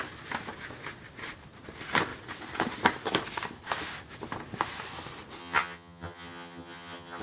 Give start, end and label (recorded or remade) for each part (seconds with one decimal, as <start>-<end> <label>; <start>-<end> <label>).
0.0-5.4 recorded; 5.4-7.2 remade